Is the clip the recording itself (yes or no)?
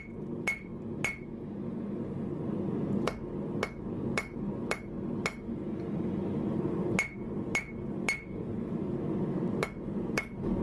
yes